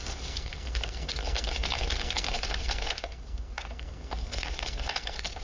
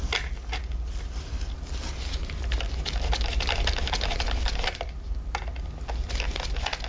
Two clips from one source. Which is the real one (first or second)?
second